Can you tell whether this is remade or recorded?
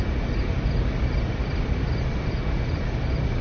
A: recorded